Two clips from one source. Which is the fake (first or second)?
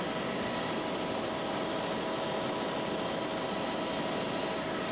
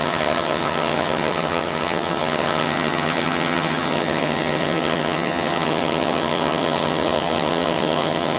second